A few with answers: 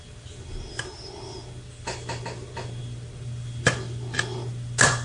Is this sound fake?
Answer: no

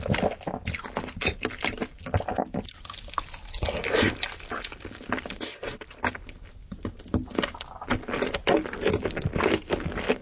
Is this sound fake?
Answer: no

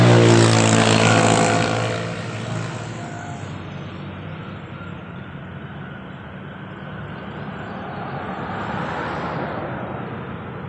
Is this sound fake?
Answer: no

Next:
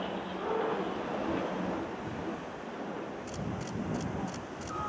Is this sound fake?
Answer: no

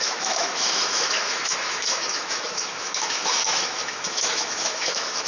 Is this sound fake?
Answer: yes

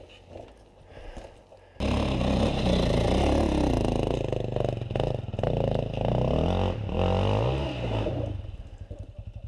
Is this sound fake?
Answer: no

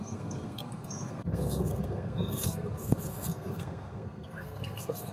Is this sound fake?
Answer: yes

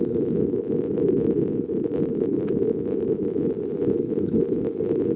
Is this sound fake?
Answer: no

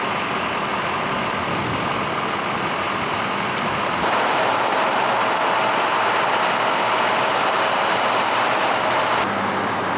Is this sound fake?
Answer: no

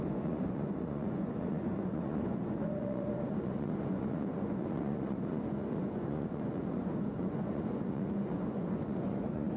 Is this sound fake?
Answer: yes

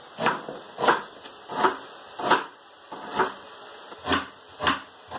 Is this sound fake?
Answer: no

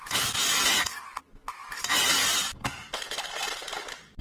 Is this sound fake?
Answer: no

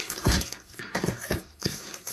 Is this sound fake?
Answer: yes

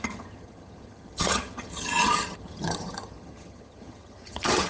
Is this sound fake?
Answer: yes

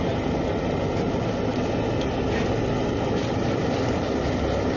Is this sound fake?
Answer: no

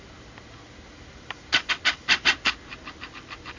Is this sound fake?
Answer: no